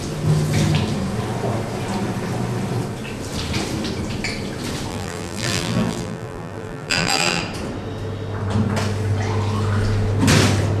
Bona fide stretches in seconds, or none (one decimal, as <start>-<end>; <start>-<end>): 0.0-4.9; 7.4-10.8